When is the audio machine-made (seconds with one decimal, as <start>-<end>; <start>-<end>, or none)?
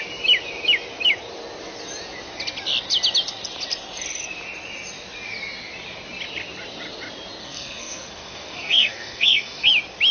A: 7.4-9.7